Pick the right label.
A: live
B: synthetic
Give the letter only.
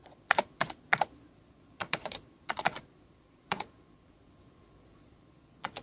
B